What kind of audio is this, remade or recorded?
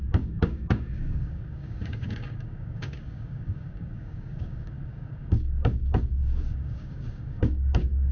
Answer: remade